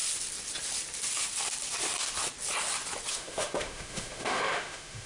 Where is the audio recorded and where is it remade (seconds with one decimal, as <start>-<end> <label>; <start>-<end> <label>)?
0.0-3.1 recorded; 3.1-5.1 remade